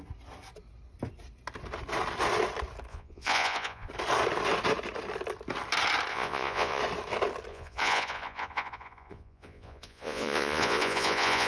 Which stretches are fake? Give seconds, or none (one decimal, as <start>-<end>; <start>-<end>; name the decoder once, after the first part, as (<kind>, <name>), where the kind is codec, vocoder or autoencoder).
2.9-3.9 (vocoder, Vocos); 6.1-6.8; 7.5-11.5